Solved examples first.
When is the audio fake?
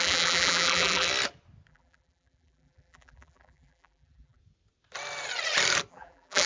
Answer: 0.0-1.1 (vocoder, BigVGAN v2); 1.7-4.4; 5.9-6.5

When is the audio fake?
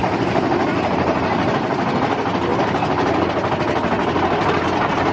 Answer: 0.0-1.5 (vocoder, BigVGAN v2); 2.5-3.3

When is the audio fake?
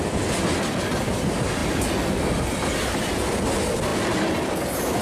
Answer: none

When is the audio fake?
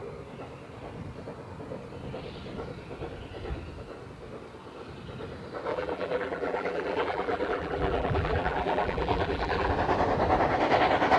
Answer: 5.7-9.7 (vocoder, BigVGAN v2)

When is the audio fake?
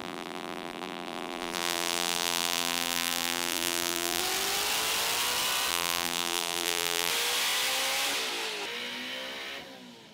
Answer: 0.0-4.2 (vocoder, BigVGAN v2); 5.7-7.1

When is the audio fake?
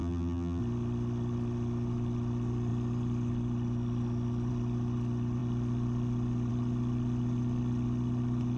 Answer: 0.0-0.6 (vocoder, BigVGAN v2)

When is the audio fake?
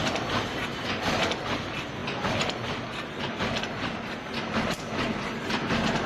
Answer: none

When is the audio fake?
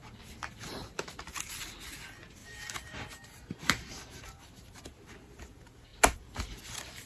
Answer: 2.4-4.8 (vocoder, BigVGAN v2)